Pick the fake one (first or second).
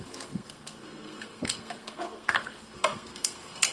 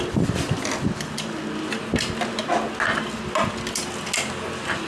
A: first